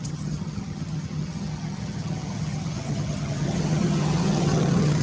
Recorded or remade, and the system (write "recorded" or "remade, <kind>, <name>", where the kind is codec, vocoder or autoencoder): remade, vocoder, HiFi-GAN